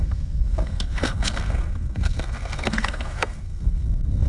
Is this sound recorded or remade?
remade